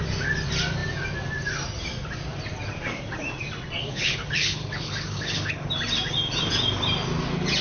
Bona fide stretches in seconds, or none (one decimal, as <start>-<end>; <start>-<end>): 0.0-3.8; 5.7-7.6